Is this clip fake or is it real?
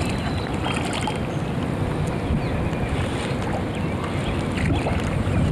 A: real